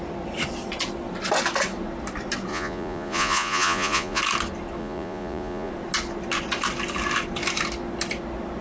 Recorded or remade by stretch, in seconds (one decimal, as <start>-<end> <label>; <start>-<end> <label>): 0.0-2.5 recorded; 2.5-4.2 remade; 4.2-4.8 recorded; 4.8-5.7 remade; 5.7-8.6 recorded